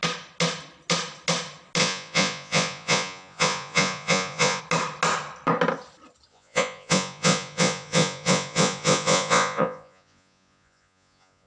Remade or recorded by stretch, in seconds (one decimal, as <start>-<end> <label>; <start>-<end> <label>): 0.0-1.8 recorded; 1.8-4.6 remade; 4.6-6.3 recorded; 6.3-11.5 remade